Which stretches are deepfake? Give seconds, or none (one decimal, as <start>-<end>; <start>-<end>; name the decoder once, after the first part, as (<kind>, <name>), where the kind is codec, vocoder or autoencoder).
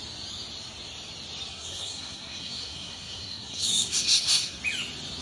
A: 1.5-4.6 (codec, SNAC)